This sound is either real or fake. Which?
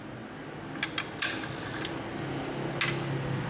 real